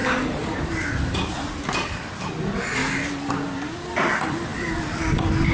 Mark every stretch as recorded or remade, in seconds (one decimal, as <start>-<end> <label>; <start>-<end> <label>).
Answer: 0.0-5.5 recorded